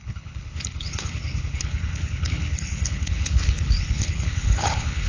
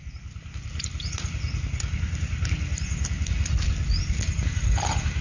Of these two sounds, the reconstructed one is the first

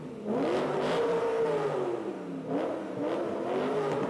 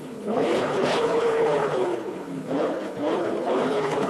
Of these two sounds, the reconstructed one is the second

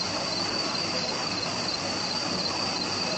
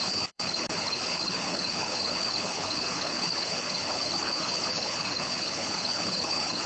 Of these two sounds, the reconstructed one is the second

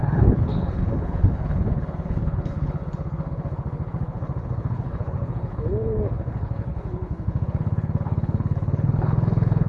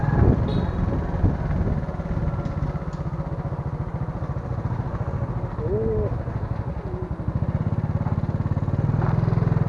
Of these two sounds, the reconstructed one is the first